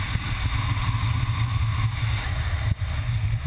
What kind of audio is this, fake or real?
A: real